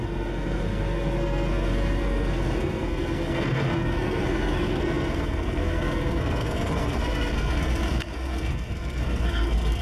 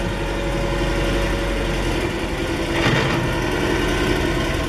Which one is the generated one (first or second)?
first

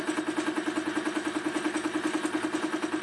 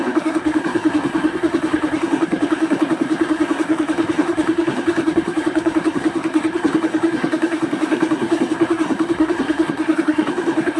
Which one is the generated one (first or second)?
second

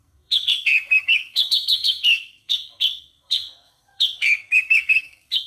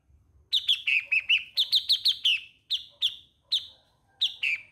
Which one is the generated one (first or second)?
first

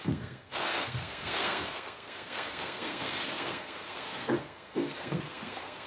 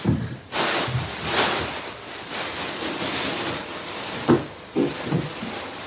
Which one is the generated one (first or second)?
first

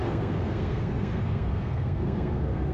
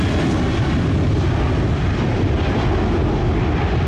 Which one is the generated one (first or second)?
first